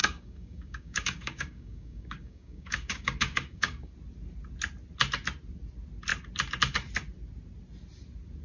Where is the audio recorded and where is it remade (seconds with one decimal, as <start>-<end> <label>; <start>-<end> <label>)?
0.0-3.9 remade; 3.9-8.4 recorded